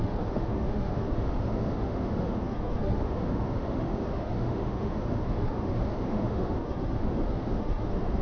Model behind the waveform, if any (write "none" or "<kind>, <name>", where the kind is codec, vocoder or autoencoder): autoencoder, DAC-VAE